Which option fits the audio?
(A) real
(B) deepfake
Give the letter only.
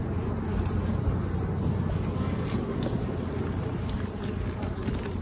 A